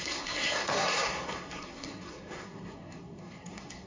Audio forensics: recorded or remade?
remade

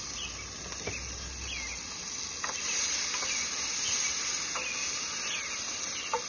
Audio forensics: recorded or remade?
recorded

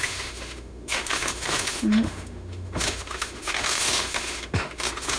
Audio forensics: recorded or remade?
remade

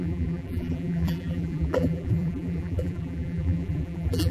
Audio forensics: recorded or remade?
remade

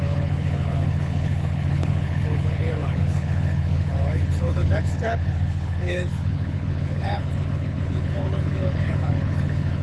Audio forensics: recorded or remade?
remade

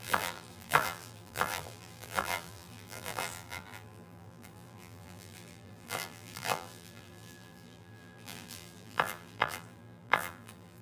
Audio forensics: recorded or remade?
remade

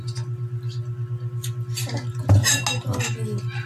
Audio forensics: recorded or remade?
recorded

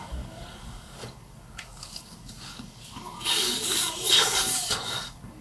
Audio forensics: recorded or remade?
remade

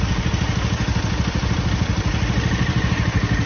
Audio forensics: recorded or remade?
recorded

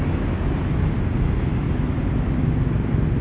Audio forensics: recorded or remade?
recorded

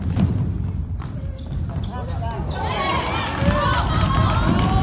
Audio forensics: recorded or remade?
recorded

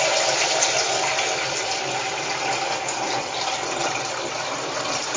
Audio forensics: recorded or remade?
recorded